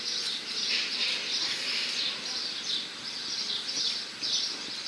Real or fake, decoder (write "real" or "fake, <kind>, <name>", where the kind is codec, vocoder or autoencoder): real